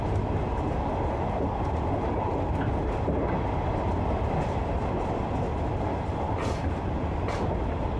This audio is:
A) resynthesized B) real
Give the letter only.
B